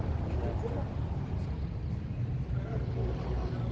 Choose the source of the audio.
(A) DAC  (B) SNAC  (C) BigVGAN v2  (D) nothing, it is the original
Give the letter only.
D